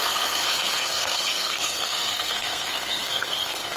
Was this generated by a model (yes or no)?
yes